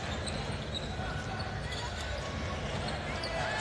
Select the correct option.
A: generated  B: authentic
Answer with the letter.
B